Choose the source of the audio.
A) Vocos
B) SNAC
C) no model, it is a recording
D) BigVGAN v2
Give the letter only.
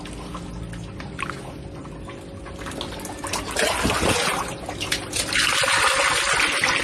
C